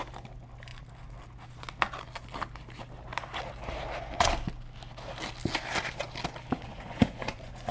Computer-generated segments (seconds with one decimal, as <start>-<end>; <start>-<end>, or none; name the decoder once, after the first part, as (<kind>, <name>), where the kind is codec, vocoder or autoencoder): 6.7-7.7 (vocoder, Vocos)